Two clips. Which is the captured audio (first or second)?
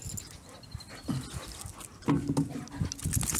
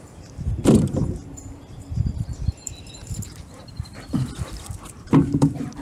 first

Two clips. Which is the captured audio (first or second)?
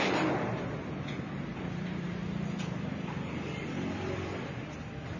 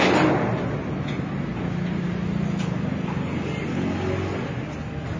second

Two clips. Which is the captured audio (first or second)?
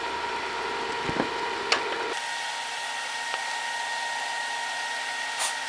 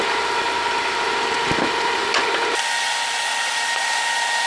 first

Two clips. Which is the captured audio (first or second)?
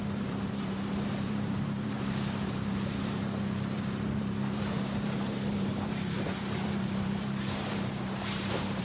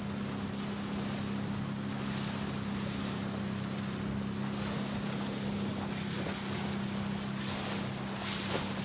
second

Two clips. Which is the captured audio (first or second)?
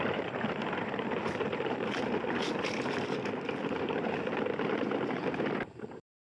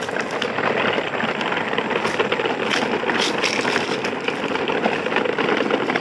second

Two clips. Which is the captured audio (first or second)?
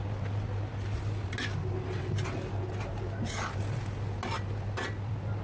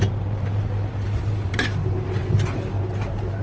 first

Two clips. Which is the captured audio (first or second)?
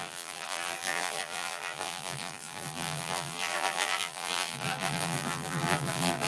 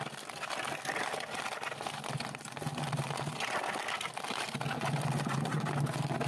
second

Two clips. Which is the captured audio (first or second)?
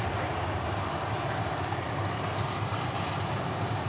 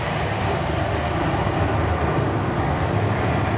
second